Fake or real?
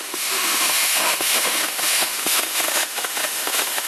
fake